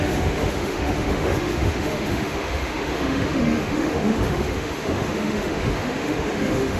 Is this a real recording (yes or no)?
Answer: no